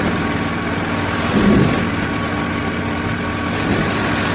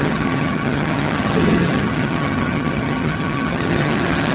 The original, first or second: first